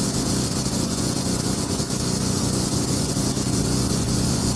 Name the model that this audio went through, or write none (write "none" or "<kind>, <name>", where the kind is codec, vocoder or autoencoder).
vocoder, Vocos